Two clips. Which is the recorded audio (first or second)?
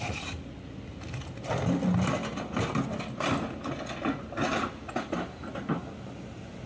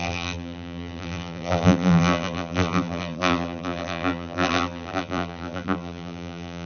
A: first